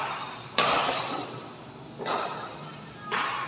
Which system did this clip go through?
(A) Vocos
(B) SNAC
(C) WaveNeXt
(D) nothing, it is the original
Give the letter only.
D